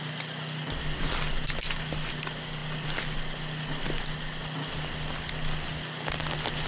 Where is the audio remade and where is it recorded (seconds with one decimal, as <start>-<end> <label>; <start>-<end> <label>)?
0.0-6.7 recorded